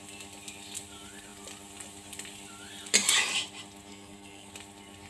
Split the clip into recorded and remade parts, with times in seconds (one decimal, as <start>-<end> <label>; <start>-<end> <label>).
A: 0.0-3.9 recorded; 3.9-4.5 remade; 4.5-5.1 recorded